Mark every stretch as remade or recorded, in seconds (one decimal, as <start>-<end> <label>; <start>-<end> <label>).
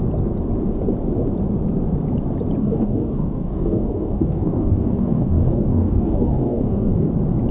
0.0-2.6 recorded; 2.6-7.1 remade; 7.1-7.5 recorded